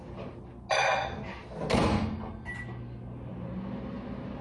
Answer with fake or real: real